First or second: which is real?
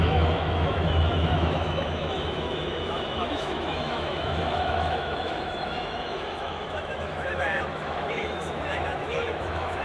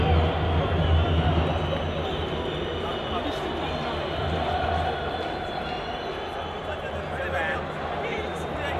second